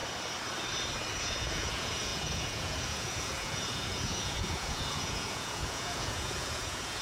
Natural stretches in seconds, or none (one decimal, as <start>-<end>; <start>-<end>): 0.0-1.2